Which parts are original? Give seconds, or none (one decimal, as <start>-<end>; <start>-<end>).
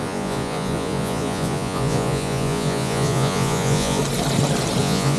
4.0-4.8